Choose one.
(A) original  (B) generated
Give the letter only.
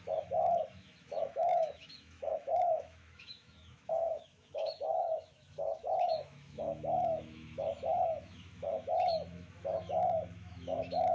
B